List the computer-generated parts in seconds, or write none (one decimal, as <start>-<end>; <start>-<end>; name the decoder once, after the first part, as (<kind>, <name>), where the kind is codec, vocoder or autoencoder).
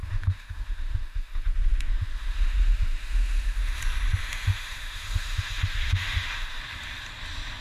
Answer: 0.0-3.8 (autoencoder, DAC-VAE); 4.2-6.6